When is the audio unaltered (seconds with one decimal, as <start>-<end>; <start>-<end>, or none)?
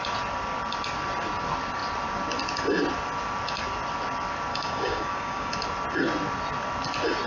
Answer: 0.0-4.5; 5.5-7.3